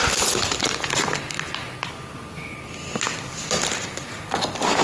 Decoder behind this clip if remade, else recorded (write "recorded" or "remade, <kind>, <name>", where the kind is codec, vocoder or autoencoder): recorded